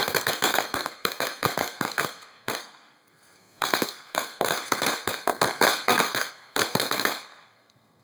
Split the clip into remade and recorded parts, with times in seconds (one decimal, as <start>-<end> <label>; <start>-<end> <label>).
0.0-8.0 remade